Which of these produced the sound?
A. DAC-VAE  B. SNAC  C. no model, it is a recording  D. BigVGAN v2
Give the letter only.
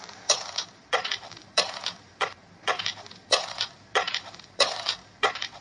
D